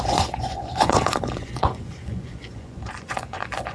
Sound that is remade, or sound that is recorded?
remade